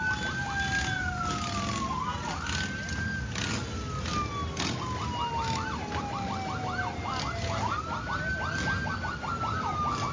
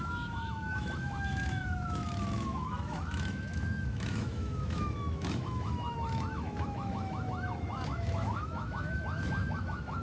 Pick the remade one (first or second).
second